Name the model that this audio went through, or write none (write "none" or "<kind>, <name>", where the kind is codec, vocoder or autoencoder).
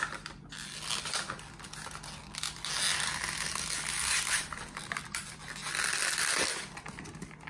none